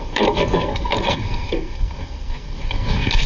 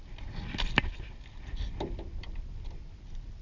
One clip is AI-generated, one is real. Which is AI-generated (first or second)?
first